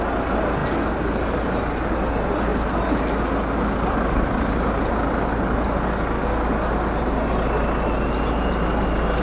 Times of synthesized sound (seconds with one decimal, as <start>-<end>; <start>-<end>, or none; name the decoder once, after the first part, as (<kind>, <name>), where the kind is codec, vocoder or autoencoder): none